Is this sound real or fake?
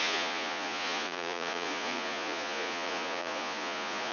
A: fake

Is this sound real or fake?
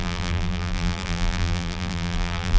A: fake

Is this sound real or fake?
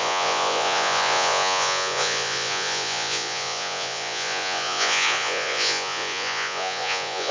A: fake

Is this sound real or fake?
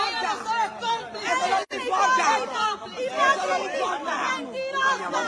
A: real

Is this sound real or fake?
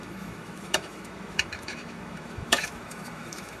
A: fake